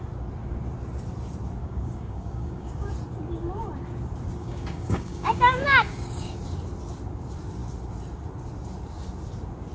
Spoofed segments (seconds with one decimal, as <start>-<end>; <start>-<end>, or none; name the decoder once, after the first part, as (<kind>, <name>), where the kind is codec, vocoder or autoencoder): 1.6-2.9 (codec, DAC); 4.4-6.4

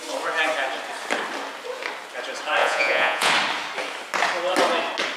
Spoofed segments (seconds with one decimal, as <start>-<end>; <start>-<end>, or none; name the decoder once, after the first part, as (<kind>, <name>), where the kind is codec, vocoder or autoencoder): 2.6-3.3 (vocoder, Vocos)

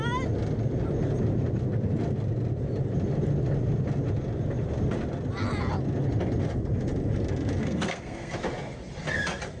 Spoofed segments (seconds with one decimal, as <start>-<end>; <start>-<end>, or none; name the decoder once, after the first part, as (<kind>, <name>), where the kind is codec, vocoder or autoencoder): 7.6-8.3 (codec, SNAC)

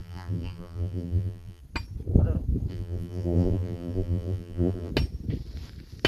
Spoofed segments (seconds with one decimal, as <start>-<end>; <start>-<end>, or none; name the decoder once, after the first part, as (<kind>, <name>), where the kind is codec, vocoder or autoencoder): 0.0-1.6 (vocoder, BigVGAN v2); 2.7-4.9

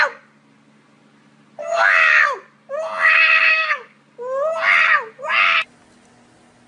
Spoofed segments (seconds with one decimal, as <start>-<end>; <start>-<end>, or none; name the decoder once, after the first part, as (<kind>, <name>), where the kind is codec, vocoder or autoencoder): 1.6-2.2 (codec, DAC); 3.5-4.0

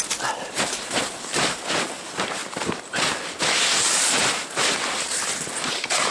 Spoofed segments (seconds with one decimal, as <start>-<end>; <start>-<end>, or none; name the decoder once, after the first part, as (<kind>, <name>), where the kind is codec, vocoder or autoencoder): none

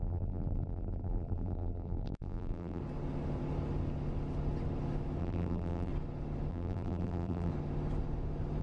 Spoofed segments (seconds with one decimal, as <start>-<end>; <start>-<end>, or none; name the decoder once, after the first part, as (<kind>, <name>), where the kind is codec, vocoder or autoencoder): 0.0-2.8 (vocoder, BigVGAN v2); 5.2-5.9; 6.5-7.5

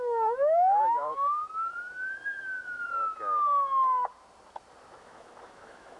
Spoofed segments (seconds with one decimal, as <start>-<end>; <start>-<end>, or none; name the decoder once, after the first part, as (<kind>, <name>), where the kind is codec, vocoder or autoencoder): 0.0-1.4 (autoencoder, DAC-VAE); 5.0-6.0